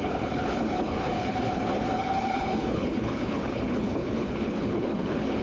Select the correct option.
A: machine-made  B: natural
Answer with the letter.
A